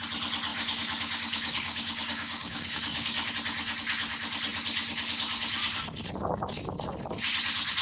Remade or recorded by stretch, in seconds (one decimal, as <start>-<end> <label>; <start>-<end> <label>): 0.0-0.5 recorded; 0.5-3.3 remade; 3.3-7.8 recorded